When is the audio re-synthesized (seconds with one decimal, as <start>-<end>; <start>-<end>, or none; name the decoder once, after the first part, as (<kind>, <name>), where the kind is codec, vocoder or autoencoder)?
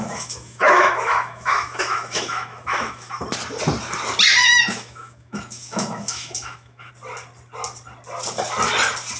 0.0-3.2 (autoencoder, DAC-VAE); 4.4-6.9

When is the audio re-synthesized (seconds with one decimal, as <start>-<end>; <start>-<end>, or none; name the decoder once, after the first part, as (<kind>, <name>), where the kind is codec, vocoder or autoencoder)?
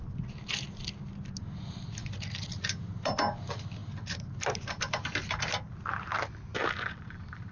none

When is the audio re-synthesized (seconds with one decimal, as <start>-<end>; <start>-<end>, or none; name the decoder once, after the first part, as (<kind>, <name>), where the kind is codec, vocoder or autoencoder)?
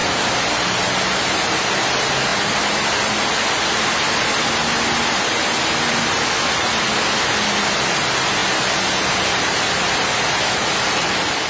none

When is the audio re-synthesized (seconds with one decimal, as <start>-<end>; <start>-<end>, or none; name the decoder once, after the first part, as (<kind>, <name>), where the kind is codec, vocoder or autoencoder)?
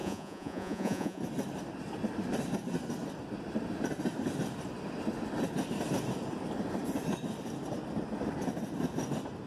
0.0-1.2 (vocoder, Vocos)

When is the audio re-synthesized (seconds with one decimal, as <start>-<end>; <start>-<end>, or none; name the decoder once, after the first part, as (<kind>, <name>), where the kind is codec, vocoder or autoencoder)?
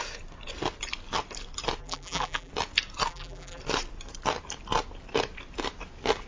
1.8-2.5 (vocoder, BigVGAN v2); 3.1-3.6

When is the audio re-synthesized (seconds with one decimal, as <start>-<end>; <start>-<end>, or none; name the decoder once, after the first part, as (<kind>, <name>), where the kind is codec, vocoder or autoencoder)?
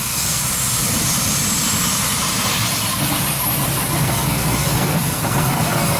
0.0-0.4 (codec, SNAC); 3.9-6.0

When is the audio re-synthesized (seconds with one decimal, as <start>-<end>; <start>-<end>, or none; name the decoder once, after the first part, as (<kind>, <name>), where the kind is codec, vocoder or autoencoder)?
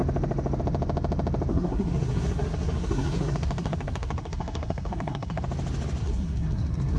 1.5-5.4 (codec, SNAC); 6.0-7.0